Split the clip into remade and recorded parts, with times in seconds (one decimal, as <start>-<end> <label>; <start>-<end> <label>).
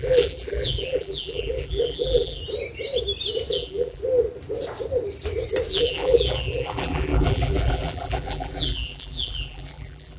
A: 0.0-2.4 remade; 2.4-3.5 recorded; 3.5-4.0 remade; 4.0-5.7 recorded; 5.7-10.2 remade